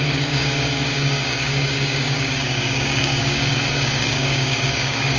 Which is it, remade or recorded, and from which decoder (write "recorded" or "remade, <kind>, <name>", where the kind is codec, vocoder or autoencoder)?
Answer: remade, codec, DAC